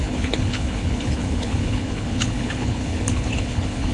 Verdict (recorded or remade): remade